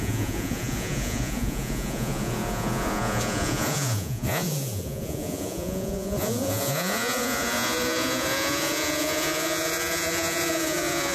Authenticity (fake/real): fake